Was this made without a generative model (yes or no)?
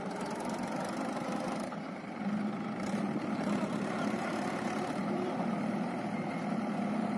no